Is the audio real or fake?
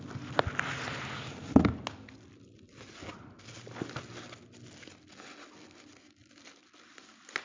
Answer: real